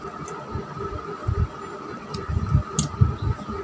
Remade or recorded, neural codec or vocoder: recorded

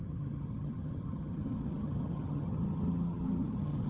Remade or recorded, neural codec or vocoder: remade, vocoder, HiFi-GAN